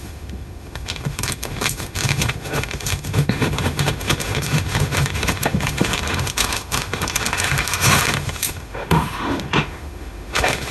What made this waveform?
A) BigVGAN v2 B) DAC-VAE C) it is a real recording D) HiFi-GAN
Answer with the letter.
B